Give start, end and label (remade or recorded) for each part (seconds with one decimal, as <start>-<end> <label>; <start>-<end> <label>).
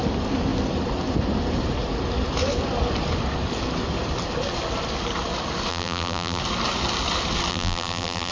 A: 0.0-5.7 recorded; 5.7-6.4 remade; 6.4-7.5 recorded; 7.5-8.3 remade